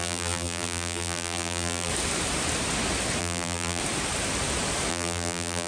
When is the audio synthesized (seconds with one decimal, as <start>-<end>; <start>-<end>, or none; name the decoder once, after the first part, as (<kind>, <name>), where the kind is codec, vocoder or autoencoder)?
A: 0.0-1.9 (vocoder, BigVGAN v2); 3.2-3.8; 4.9-5.7

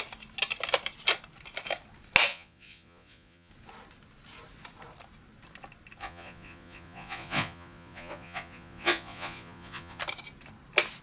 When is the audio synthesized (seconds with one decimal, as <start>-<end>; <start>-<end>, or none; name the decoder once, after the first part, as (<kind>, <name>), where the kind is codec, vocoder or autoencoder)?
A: 2.3-3.5 (vocoder, Vocos); 6.0-10.0

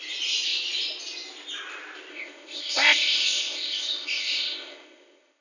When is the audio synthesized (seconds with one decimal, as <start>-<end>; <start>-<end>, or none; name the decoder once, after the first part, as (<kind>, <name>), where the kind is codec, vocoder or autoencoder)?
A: 2.1-5.4 (codec, ZipCodec)